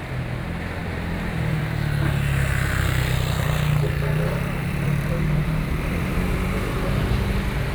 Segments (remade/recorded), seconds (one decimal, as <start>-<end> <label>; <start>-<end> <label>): 0.0-0.8 recorded; 0.8-1.6 remade; 1.6-4.6 recorded; 4.6-6.3 remade; 6.3-7.7 recorded